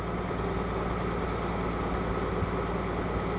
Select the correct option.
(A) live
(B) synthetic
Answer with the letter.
A